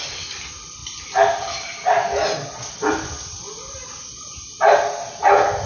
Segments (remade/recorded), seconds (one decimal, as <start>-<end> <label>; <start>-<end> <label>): 0.0-5.7 recorded

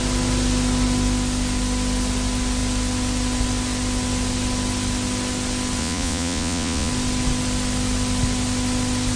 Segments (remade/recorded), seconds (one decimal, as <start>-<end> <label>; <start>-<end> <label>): 0.0-5.8 recorded; 5.8-6.9 remade; 6.9-9.2 recorded

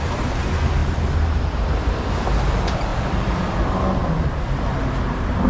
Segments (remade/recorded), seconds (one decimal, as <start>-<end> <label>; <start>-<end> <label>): 0.0-0.8 recorded; 0.8-1.5 remade; 1.5-4.0 recorded; 4.0-4.8 remade; 4.8-5.5 recorded

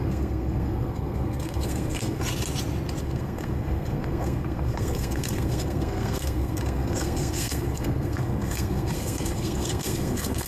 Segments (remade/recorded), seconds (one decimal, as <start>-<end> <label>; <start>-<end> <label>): 0.0-2.2 remade; 2.2-3.0 recorded; 3.0-10.5 remade

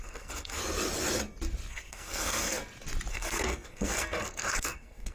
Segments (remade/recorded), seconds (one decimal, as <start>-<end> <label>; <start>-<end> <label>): 0.0-0.6 remade; 0.6-1.7 recorded; 1.7-2.6 remade; 2.6-3.1 recorded; 3.1-5.1 remade

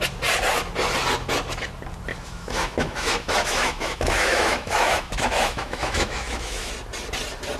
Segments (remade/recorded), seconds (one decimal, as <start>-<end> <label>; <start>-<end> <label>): 0.0-2.1 recorded; 2.1-6.7 remade; 6.7-7.6 recorded